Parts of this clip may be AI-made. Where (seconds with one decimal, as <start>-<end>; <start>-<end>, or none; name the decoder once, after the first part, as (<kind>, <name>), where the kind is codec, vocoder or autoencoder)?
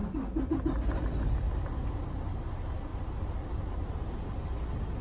2.9-4.2 (vocoder, BigVGAN v2)